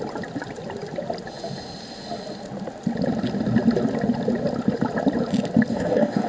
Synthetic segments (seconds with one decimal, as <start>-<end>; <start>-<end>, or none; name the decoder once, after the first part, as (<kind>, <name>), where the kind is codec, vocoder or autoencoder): 5.7-6.3 (codec, DAC)